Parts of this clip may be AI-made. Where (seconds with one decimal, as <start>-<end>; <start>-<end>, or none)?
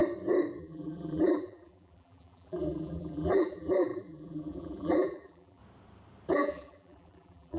0.6-5.6; 6.3-7.6